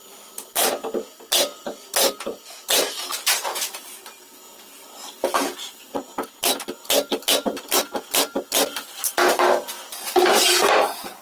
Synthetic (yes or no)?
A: no